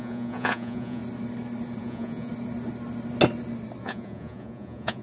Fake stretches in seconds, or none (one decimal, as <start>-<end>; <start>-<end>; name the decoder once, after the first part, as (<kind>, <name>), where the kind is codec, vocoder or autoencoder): 0.0-1.0 (vocoder, Vocos); 1.8-2.3; 3.8-5.0